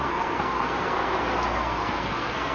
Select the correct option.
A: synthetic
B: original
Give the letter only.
A